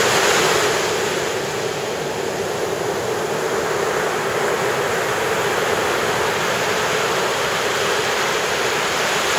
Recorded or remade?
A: recorded